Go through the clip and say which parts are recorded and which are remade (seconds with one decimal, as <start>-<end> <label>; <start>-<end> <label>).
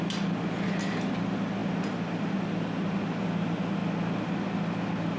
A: 0.0-5.2 recorded